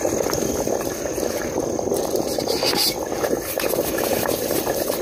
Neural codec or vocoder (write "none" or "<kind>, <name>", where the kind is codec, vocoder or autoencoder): none